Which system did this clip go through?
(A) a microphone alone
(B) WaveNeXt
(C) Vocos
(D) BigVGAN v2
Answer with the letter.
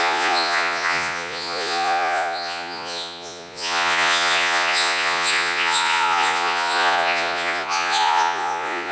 C